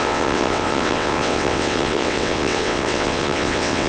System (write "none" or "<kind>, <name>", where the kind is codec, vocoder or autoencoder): vocoder, WaveNeXt